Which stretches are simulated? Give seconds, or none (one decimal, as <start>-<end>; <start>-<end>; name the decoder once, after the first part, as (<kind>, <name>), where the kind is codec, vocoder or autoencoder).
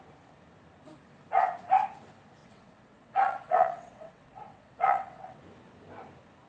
2.4-5.4 (vocoder, WaveNeXt)